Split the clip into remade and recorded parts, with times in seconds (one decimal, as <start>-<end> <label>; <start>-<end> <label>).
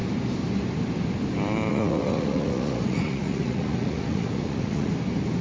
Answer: 0.0-1.7 recorded; 1.7-4.9 remade; 4.9-5.4 recorded